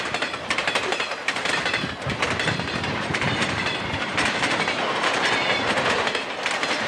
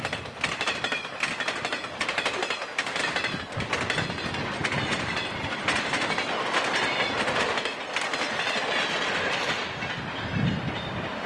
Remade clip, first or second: first